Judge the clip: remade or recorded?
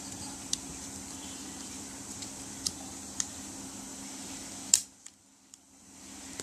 remade